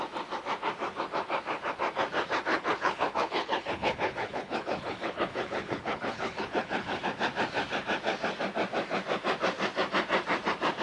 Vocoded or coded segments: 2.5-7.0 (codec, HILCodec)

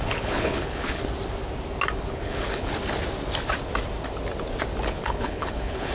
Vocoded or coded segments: 0.0-1.0 (codec, HILCodec); 2.1-2.7; 4.9-5.9

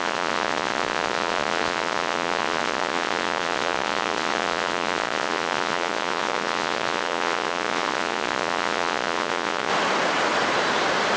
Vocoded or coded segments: 0.0-9.7 (vocoder, Vocos)

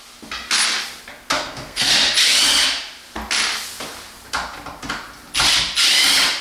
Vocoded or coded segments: 1.3-1.9 (codec, SNAC)

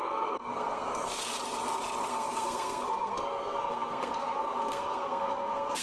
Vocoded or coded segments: 0.0-1.3 (codec, SNAC); 2.1-5.8

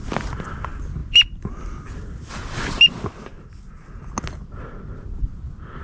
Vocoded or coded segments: none

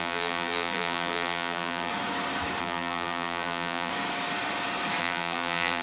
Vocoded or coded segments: 0.0-1.9 (vocoder, BigVGAN v2); 2.6-3.9; 5.0-5.8

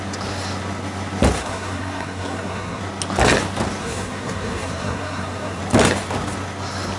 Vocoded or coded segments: 1.4-2.8 (codec, SNAC); 3.8-5.6